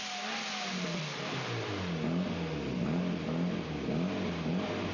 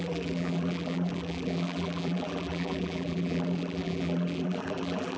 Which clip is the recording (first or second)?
first